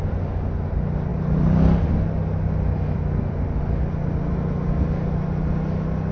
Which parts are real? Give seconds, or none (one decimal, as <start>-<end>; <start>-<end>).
0.0-6.1